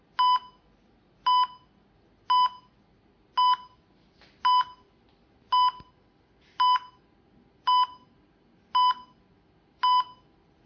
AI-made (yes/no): no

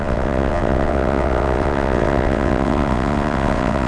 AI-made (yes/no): yes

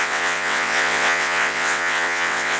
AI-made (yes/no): yes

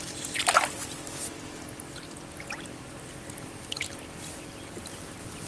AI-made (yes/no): no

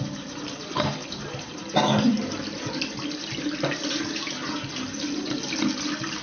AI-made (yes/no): no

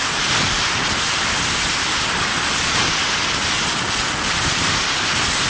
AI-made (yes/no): no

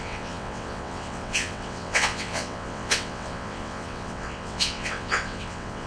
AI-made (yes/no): yes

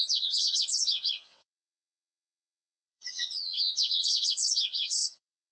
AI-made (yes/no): yes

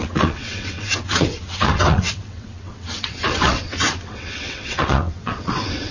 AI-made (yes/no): yes